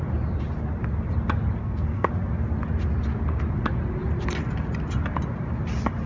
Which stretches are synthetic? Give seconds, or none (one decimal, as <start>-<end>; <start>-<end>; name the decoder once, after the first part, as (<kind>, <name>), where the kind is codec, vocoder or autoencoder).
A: 1.6-2.1 (codec, SNAC)